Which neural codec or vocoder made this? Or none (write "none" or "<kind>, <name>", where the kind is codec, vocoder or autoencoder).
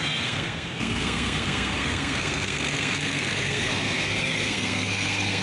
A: codec, SNAC